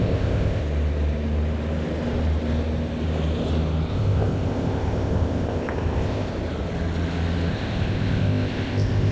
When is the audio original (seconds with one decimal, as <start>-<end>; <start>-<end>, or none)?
0.6-3.9; 6.3-7.5